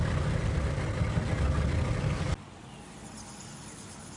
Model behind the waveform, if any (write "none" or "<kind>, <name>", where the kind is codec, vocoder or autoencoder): none